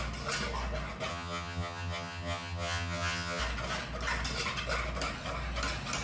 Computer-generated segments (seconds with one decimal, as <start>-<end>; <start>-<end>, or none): 1.1-3.4